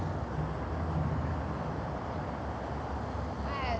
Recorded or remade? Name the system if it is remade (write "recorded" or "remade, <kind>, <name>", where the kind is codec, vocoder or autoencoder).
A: recorded